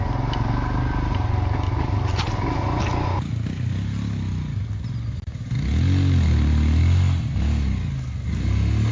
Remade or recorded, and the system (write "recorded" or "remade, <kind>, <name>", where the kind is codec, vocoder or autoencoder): recorded